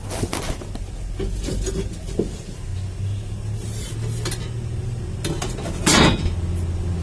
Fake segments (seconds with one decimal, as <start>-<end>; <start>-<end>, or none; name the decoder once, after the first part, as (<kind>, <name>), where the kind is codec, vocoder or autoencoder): none